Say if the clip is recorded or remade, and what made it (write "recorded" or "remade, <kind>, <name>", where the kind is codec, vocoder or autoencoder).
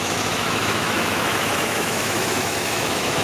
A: remade, autoencoder, DAC-VAE